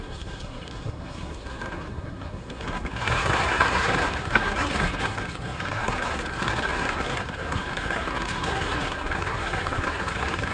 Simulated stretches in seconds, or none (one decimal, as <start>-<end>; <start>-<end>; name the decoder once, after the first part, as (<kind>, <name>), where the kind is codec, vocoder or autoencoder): 0.0-10.5 (codec, SNAC)